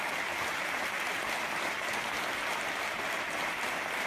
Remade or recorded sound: recorded